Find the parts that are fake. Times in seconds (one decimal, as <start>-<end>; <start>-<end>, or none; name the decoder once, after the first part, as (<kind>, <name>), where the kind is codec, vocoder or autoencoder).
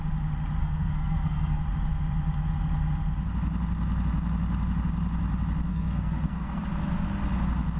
0.6-1.6 (codec, SNAC); 5.7-6.6